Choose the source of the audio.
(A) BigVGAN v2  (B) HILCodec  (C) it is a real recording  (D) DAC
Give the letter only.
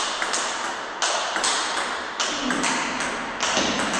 C